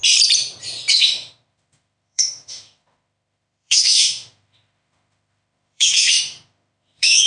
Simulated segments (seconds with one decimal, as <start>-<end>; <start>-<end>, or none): 0.9-7.3